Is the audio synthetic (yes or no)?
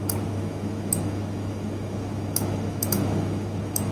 yes